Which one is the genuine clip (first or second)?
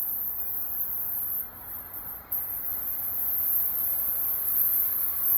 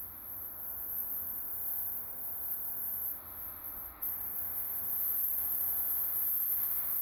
first